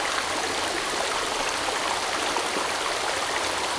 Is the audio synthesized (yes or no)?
no